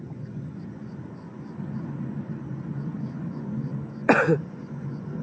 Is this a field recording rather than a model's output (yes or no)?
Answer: no